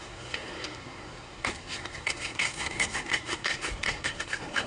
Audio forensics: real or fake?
fake